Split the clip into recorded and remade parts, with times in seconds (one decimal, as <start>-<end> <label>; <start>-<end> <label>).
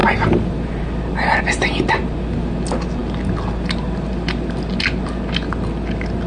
0.0-6.3 recorded